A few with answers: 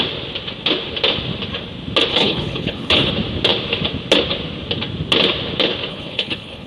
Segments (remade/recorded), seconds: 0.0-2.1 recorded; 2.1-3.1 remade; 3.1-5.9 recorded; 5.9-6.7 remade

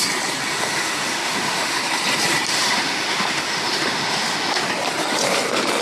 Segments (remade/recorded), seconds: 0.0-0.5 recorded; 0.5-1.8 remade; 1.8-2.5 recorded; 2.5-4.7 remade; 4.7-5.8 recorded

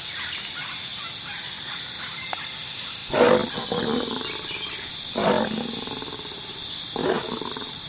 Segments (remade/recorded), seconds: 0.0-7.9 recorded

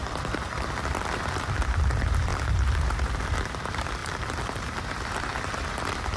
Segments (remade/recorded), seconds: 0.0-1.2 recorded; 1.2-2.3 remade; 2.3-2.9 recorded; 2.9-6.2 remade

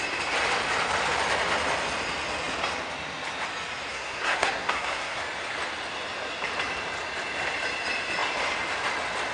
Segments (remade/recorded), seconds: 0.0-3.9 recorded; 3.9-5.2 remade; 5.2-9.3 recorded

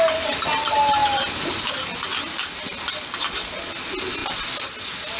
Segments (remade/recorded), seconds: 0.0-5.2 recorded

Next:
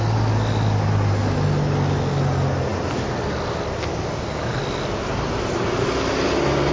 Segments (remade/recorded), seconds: 0.0-6.7 recorded

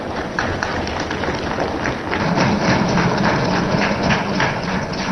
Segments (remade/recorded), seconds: 0.0-0.7 remade; 0.7-3.4 recorded; 3.4-5.1 remade